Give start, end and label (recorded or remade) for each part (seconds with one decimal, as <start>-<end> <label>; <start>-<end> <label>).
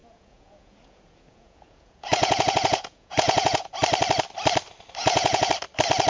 0.0-3.7 remade; 3.7-5.0 recorded; 5.0-5.5 remade; 5.5-6.1 recorded